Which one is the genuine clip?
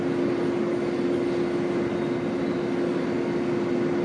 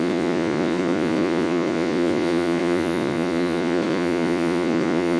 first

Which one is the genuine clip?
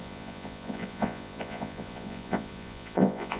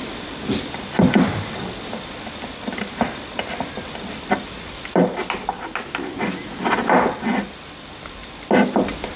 second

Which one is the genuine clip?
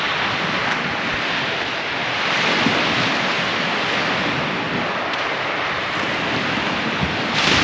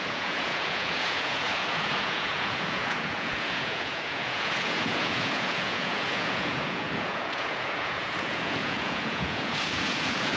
first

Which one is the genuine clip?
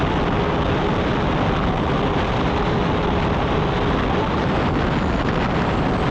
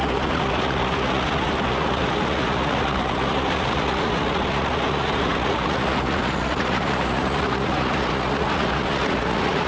first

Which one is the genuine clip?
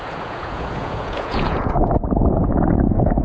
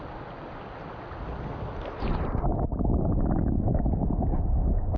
second